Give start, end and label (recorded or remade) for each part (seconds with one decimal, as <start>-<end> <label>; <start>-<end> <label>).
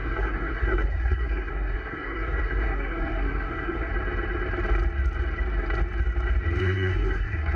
0.0-3.9 remade; 3.9-6.6 recorded; 6.6-7.6 remade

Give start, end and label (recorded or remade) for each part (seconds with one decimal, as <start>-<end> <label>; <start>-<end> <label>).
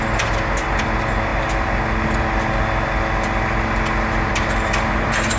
0.0-5.4 recorded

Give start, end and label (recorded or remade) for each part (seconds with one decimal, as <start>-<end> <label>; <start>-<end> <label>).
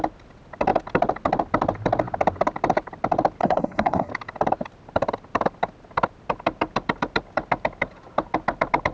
0.0-3.4 recorded; 3.4-4.1 remade; 4.1-8.9 recorded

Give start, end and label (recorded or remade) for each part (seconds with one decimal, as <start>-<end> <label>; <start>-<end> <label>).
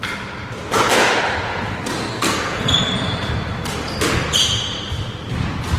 0.0-2.1 recorded; 2.1-2.7 remade; 2.7-5.8 recorded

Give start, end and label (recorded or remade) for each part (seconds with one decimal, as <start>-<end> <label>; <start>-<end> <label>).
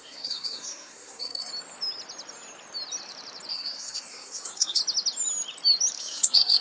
0.0-1.5 remade; 1.5-3.5 recorded; 3.5-4.8 remade; 4.8-6.0 recorded; 6.0-6.6 remade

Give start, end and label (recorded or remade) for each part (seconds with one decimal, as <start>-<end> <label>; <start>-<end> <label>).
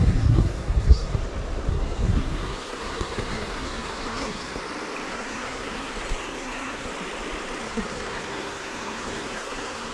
0.0-1.2 remade; 1.2-1.7 recorded; 1.7-4.6 remade; 4.6-5.1 recorded; 5.1-6.9 remade; 6.9-7.6 recorded; 7.6-9.9 remade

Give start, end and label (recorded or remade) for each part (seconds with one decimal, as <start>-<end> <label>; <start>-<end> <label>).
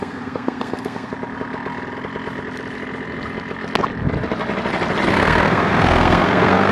0.0-1.1 remade; 1.1-5.1 recorded; 5.1-6.7 remade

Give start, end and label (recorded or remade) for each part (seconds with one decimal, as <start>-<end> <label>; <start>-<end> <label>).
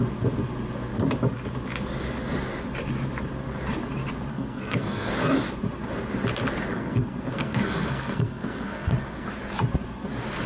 0.0-4.3 recorded; 4.3-5.1 remade; 5.1-6.7 recorded; 6.7-9.3 remade; 9.3-10.5 recorded